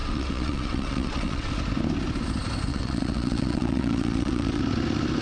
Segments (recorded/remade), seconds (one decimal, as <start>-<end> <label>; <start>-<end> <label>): 0.0-1.5 remade; 1.5-2.7 recorded; 2.7-4.6 remade; 4.6-5.2 recorded